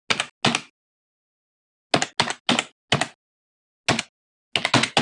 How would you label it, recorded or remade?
recorded